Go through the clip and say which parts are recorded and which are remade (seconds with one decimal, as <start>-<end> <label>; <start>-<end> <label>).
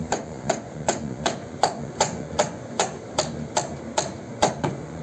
0.0-3.0 remade; 3.0-4.3 recorded; 4.3-5.0 remade